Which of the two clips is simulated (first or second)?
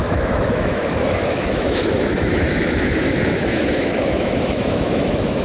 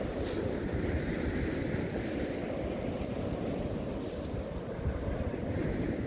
first